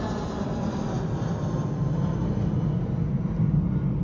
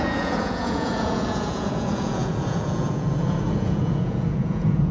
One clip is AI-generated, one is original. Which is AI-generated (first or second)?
second